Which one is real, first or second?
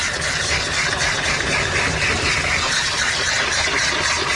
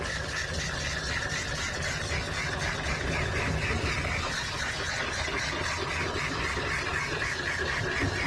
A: second